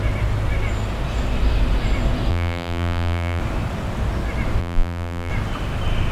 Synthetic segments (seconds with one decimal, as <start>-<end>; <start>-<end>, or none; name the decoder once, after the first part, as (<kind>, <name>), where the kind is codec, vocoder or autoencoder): 2.3-3.4 (vocoder, BigVGAN v2); 4.6-5.3